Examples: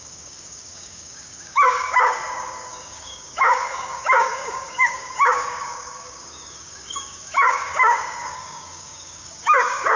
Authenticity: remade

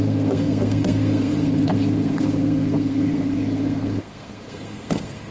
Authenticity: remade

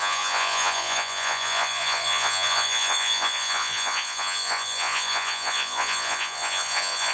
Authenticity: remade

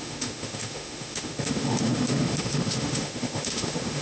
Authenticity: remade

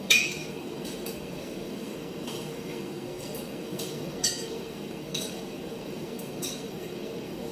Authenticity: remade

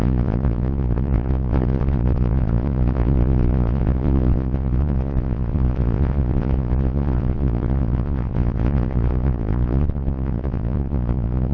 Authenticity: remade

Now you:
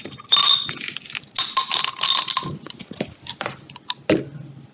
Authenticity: recorded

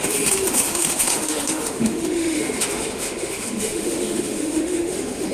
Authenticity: remade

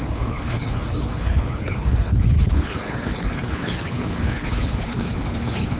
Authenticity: remade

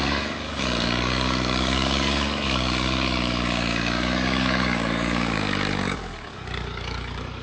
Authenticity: remade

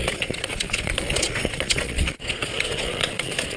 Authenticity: remade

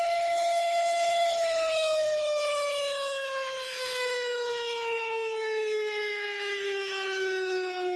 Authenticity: remade